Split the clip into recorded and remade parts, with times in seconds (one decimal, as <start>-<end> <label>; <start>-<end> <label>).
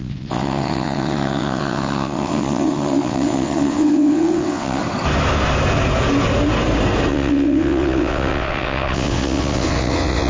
0.0-4.8 remade; 4.8-7.1 recorded; 7.1-10.3 remade